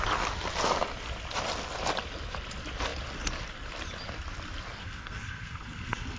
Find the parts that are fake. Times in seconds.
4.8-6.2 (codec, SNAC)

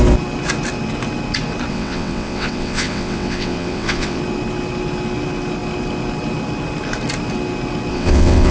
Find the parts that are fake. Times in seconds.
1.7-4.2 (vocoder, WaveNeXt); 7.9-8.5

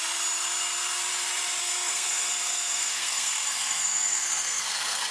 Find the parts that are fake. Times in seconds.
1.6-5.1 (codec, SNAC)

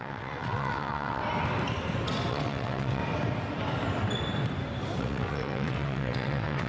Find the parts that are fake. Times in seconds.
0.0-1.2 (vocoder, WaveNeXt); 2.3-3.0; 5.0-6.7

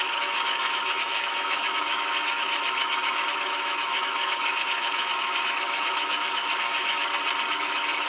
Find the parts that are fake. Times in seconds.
0.0-7.0 (autoencoder, DAC-VAE); 7.5-8.1

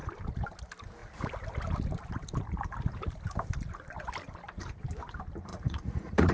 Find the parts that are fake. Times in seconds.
5.5-6.3 (vocoder, Vocos)